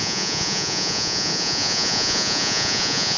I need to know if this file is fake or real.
fake